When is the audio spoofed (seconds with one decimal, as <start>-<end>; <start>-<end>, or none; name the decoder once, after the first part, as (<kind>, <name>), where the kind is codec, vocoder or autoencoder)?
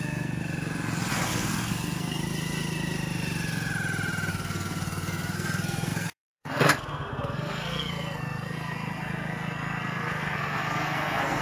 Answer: 0.0-0.4 (codec, SNAC); 1.1-2.2; 4.3-11.4